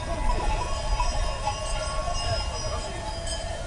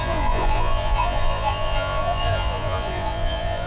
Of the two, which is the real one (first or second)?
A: first